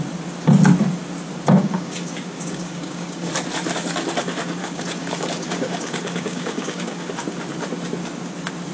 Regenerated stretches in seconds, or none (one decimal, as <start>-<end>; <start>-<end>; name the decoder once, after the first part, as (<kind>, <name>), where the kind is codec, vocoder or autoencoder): 1.6-3.3 (codec, DAC); 4.6-7.1